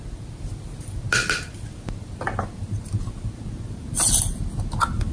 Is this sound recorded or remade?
recorded